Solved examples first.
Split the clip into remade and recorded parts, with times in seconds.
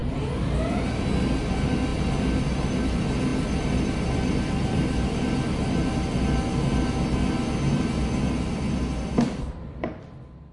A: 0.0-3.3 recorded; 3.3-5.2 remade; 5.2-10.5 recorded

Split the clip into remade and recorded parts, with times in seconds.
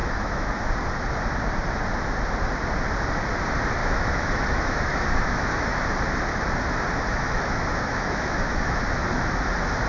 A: 0.0-0.6 remade; 0.6-3.8 recorded; 3.8-5.8 remade; 5.8-7.1 recorded; 7.1-8.8 remade; 8.8-9.9 recorded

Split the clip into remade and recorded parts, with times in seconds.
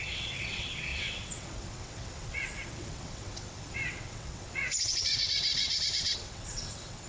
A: 0.0-7.1 remade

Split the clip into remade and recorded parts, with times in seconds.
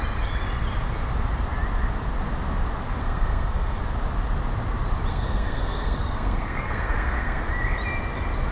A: 0.0-3.0 recorded; 3.0-3.8 remade; 3.8-5.1 recorded; 5.1-7.4 remade; 7.4-8.5 recorded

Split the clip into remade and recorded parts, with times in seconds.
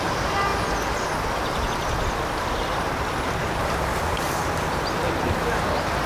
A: 0.0-6.1 recorded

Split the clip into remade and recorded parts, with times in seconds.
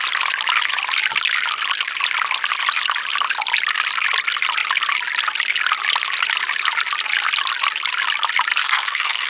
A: 0.0-8.6 recorded; 8.6-9.3 remade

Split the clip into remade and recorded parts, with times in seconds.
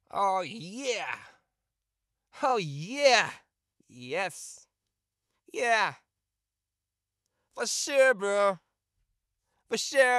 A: 0.0-2.5 recorded; 2.5-7.6 remade; 7.6-8.2 recorded; 8.2-9.0 remade; 9.0-10.2 recorded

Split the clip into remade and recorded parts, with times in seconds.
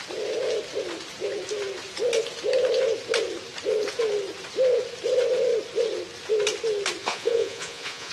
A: 0.0-7.0 recorded; 7.0-8.1 remade